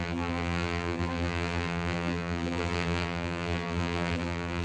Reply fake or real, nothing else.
fake